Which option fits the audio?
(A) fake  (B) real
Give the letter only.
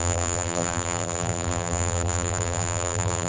A